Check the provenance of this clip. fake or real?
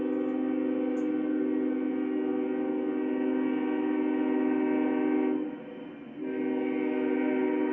real